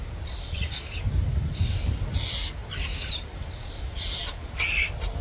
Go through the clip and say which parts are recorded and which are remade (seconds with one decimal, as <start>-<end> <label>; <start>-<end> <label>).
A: 0.0-5.2 recorded